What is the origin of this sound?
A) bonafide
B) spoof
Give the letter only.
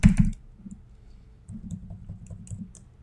A